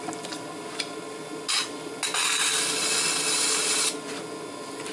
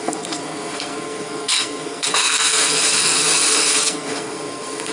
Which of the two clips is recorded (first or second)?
first